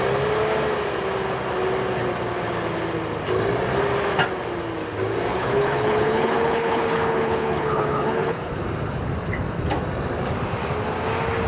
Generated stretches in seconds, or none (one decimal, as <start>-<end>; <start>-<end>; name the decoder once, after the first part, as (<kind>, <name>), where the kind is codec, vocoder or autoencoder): 5.3-8.6 (codec, HILCodec)